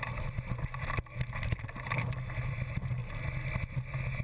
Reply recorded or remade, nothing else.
recorded